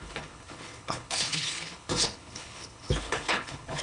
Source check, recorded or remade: remade